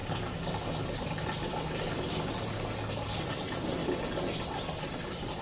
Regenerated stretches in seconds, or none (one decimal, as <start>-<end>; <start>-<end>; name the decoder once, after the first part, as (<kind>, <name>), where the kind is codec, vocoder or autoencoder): 3.2-3.8 (vocoder, BigVGAN v2)